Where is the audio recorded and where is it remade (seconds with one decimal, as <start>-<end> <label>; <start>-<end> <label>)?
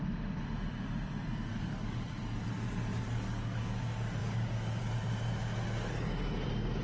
0.0-1.5 recorded; 1.5-2.2 remade; 2.2-2.9 recorded; 2.9-3.8 remade; 3.8-4.2 recorded; 4.2-4.8 remade; 4.8-6.8 recorded